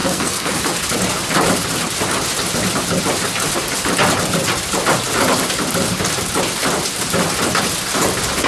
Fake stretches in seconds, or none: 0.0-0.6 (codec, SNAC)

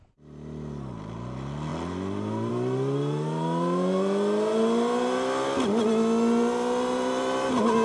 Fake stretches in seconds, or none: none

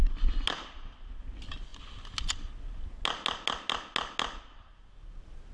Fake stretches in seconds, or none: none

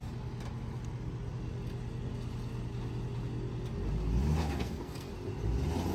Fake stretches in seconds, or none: 4.4-5.1 (codec, SNAC)

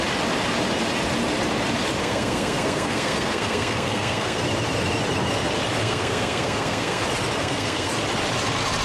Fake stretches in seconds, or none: 2.0-4.4 (codec, SNAC); 5.8-7.0; 7.4-7.9

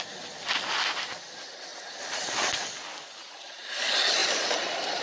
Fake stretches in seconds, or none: none

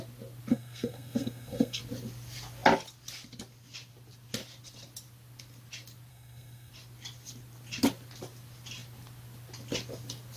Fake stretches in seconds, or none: 0.5-1.8 (codec, SNAC); 6.1-6.7